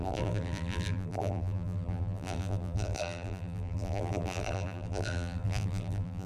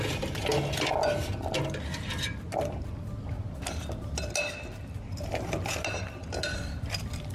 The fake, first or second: first